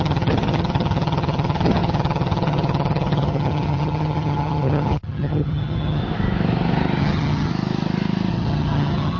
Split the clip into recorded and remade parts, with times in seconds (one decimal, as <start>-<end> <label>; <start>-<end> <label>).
0.0-6.0 remade; 6.0-7.0 recorded; 7.0-7.5 remade; 7.5-8.3 recorded; 8.3-9.2 remade